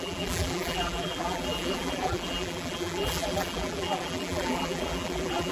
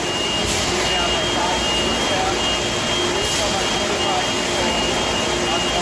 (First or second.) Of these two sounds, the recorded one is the second